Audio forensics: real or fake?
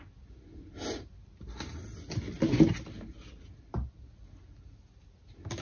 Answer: real